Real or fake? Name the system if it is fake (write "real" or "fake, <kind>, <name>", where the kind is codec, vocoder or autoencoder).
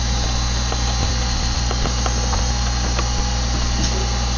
real